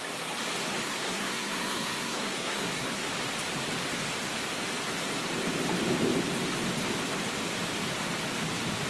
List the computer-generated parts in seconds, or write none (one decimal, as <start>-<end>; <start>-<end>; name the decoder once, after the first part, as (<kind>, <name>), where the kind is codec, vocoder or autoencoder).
0.7-3.1 (codec, SNAC)